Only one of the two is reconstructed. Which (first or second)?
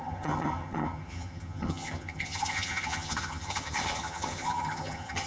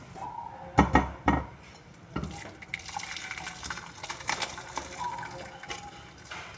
first